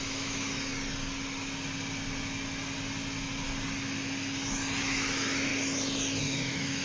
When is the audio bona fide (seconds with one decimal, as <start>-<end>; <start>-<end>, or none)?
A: 0.7-4.8; 5.5-6.2